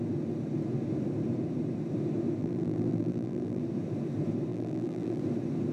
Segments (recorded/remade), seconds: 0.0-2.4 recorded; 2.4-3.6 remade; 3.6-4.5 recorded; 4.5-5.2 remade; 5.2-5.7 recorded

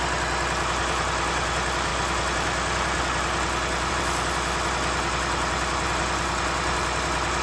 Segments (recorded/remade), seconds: 0.0-7.4 recorded

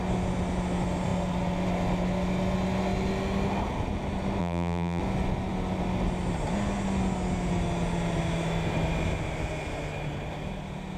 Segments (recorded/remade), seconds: 0.0-4.4 recorded; 4.4-5.0 remade; 5.0-11.0 recorded